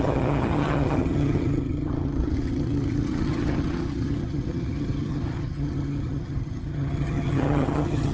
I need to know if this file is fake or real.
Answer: fake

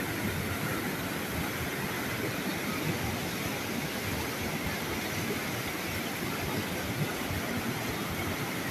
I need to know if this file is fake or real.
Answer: real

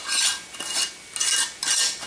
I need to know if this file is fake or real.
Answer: real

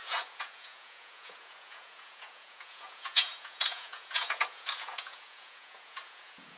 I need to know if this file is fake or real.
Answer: fake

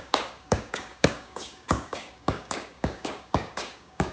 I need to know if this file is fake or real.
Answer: fake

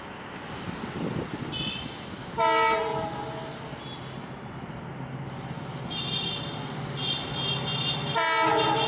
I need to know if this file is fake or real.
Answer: real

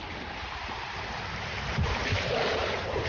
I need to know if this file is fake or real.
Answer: fake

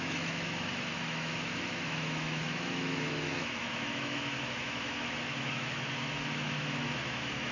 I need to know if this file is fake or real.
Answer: fake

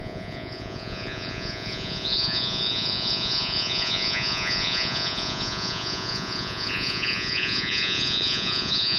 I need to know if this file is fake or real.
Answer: fake